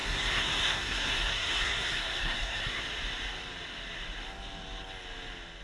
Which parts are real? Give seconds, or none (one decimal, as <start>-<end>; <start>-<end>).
2.8-5.6